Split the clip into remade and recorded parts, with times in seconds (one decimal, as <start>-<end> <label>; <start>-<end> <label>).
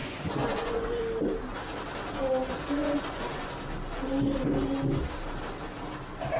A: 0.0-1.0 remade; 1.0-2.8 recorded; 2.8-3.5 remade; 3.5-6.4 recorded